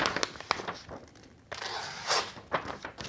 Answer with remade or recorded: recorded